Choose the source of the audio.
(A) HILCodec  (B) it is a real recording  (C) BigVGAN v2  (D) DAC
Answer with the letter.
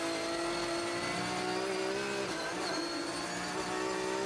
B